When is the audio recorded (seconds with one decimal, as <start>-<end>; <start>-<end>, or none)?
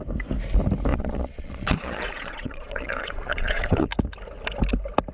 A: 0.0-0.9; 3.9-5.1